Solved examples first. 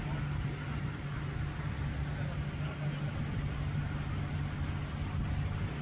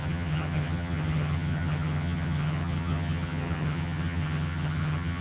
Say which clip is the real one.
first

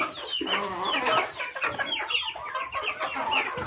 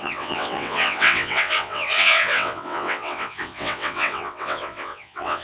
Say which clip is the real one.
first